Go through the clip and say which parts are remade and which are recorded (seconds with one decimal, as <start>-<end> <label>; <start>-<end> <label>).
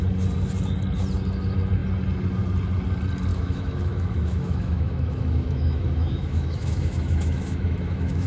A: 0.0-3.3 recorded; 3.3-8.3 remade